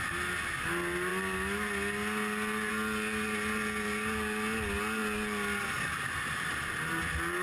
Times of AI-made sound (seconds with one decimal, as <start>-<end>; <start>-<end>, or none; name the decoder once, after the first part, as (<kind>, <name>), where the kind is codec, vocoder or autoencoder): none